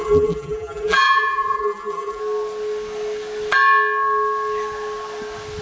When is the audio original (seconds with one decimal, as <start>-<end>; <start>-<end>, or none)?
2.2-5.6